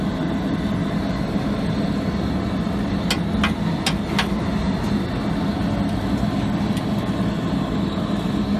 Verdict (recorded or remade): recorded